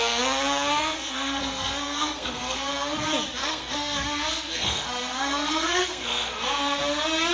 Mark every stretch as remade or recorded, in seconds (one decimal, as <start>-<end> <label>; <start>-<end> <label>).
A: 0.0-0.7 recorded; 0.7-2.7 remade; 2.7-3.4 recorded; 3.4-6.8 remade; 6.8-7.3 recorded